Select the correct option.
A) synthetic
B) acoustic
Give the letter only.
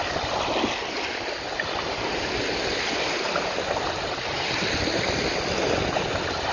B